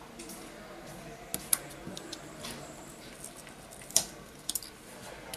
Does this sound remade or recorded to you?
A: recorded